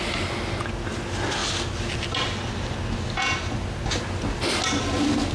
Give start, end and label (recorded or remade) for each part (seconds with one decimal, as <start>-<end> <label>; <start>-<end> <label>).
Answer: 0.0-5.3 recorded